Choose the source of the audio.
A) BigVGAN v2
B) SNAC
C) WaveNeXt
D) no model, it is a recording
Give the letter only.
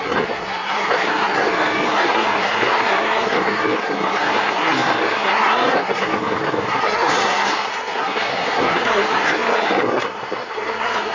B